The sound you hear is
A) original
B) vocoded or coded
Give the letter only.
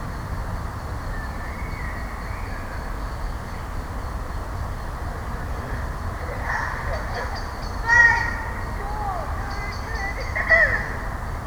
A